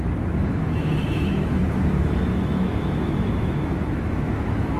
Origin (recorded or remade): remade